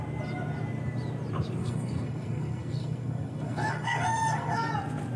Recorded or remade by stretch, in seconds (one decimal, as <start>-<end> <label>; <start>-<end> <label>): 0.0-1.6 recorded; 1.6-4.7 remade; 4.7-5.2 recorded

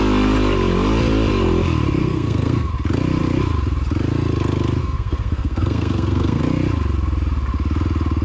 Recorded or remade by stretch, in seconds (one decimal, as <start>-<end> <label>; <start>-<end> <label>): 0.0-2.0 recorded; 2.0-2.7 remade; 2.7-4.8 recorded; 4.8-6.4 remade; 6.4-8.2 recorded

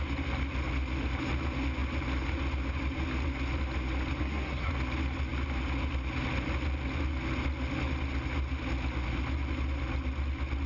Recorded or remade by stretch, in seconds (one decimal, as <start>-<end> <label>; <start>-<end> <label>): 0.0-4.2 recorded; 4.2-4.7 remade; 4.7-10.7 recorded

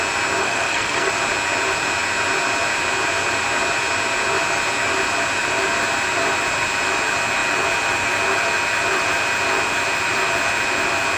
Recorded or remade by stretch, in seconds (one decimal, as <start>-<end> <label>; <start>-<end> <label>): 0.0-0.4 recorded; 0.4-1.1 remade; 1.1-11.2 recorded

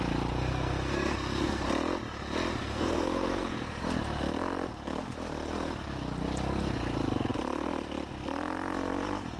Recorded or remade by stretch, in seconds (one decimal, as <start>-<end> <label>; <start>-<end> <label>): 0.0-0.5 recorded; 0.5-1.6 remade; 1.6-2.6 recorded; 2.6-3.8 remade; 3.8-9.4 recorded

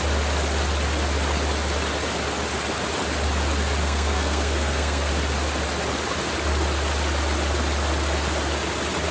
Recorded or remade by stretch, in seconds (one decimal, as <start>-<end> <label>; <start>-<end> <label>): 0.0-3.8 recorded; 3.8-5.1 remade; 5.1-9.1 recorded

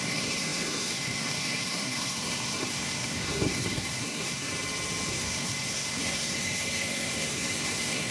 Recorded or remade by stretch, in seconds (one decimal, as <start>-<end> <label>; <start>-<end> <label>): 0.0-4.5 remade; 4.5-5.1 recorded; 5.1-8.1 remade